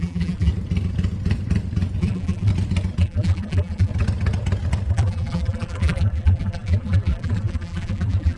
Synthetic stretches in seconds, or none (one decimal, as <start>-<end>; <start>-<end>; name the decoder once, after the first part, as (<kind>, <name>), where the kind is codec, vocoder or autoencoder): 0.0-0.5 (vocoder, BigVGAN v2); 2.0-2.5; 3.0-3.9; 4.9-8.4